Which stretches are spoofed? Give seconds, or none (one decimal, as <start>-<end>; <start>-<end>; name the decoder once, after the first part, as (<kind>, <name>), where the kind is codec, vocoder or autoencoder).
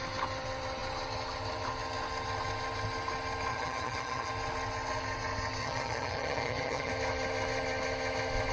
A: 3.5-4.3 (vocoder, HiFi-GAN); 5.6-6.9